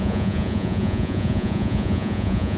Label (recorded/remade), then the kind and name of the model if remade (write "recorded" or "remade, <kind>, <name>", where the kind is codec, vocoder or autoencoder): remade, vocoder, Vocos